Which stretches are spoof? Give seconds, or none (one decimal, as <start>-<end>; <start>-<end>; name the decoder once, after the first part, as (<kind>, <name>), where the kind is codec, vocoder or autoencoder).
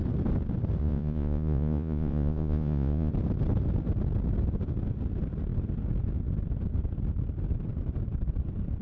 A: 0.8-3.1 (vocoder, Vocos)